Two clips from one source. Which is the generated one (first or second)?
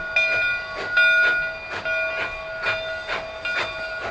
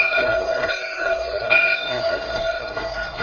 second